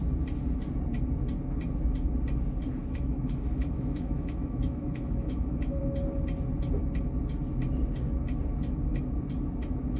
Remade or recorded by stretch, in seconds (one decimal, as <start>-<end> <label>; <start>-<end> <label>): 0.0-2.8 recorded; 2.8-5.8 remade; 5.8-10.0 recorded